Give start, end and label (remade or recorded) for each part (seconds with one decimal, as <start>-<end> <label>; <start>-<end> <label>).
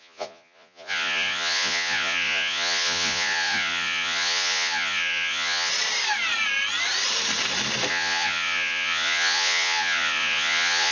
0.0-5.7 remade; 5.7-7.9 recorded; 7.9-10.9 remade